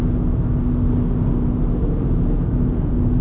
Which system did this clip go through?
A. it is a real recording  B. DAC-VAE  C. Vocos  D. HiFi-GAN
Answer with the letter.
A